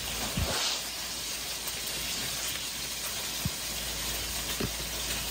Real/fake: real